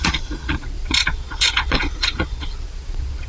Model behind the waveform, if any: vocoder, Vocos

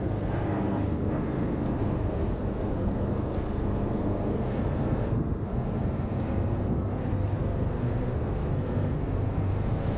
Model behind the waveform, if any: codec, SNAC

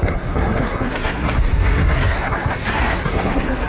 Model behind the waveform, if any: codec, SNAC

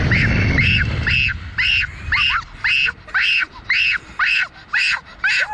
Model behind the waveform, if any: none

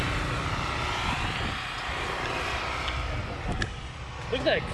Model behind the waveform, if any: none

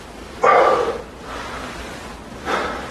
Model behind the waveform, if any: none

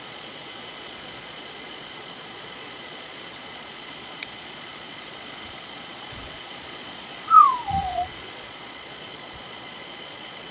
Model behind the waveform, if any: vocoder, Vocos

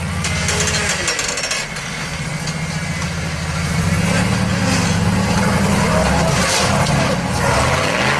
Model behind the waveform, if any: none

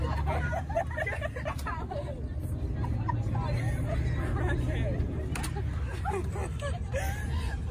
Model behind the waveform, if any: none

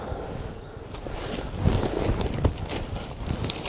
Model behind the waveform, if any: none